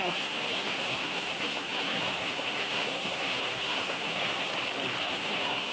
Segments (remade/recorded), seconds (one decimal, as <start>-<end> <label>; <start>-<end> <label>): 0.0-4.5 remade; 4.5-5.0 recorded; 5.0-5.7 remade